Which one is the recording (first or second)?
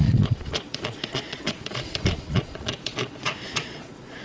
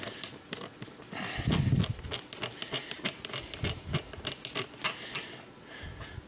second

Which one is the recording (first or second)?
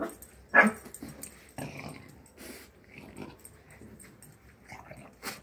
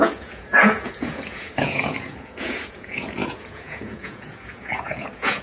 first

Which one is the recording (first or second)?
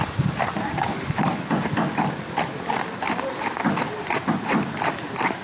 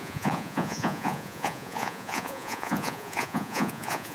first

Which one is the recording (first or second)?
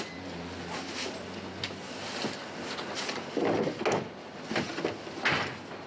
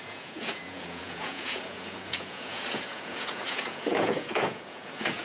first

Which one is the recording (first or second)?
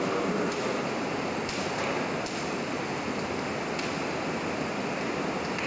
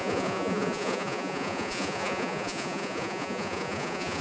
first